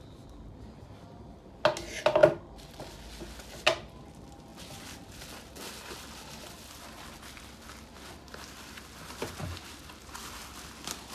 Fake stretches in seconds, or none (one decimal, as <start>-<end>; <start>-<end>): 9.4-10.0